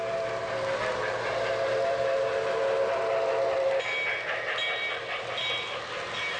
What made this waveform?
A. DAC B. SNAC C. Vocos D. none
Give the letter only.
D